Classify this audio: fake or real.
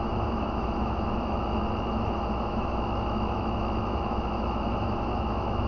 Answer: fake